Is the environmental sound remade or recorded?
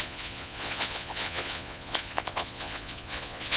remade